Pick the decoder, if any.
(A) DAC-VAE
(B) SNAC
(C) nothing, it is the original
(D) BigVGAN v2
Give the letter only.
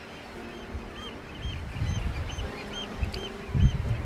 D